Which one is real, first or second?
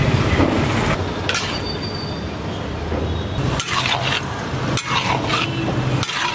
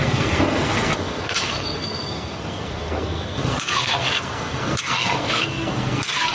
first